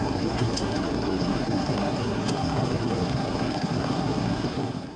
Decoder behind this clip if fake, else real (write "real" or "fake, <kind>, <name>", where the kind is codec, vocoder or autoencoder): fake, codec, SNAC